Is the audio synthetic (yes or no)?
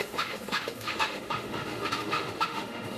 yes